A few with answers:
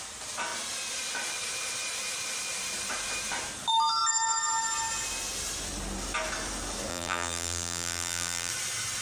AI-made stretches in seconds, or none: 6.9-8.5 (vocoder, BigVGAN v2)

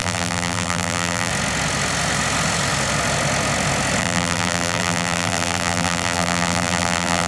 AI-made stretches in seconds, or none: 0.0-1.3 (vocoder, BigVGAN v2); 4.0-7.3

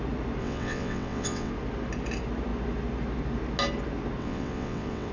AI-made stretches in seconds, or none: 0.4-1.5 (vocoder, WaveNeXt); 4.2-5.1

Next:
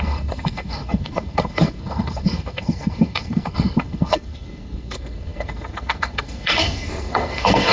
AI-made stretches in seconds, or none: 0.0-7.7 (codec, SNAC)

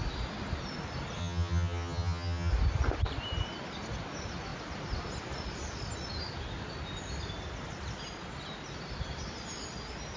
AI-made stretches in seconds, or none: 1.2-2.5 (vocoder, HiFi-GAN)

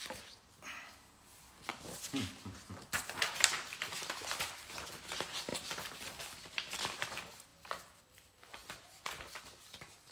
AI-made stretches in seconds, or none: 0.0-8.6 (vocoder, BigVGAN v2); 9.4-10.1

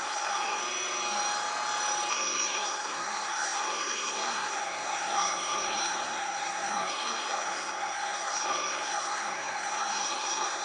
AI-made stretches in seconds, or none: 0.0-0.6 (codec, SNAC); 2.1-10.6

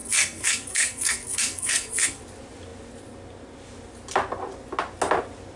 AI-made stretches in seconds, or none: 0.0-2.2 (codec, SNAC)